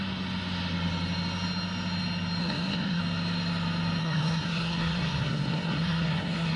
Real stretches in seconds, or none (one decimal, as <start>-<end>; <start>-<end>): 0.0-2.4; 3.0-4.0